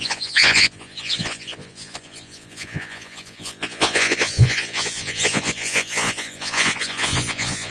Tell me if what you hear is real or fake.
fake